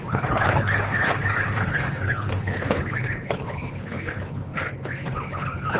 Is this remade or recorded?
remade